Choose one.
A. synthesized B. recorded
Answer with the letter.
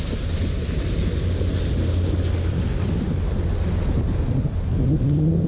B